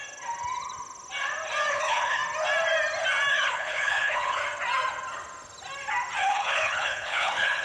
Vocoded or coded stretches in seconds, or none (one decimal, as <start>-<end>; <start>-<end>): 1.7-2.2; 3.3-4.4; 6.2-7.6